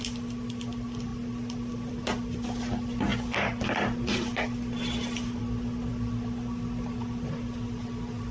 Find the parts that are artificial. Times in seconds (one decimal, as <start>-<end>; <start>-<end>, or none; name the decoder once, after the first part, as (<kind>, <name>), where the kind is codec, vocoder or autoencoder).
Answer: none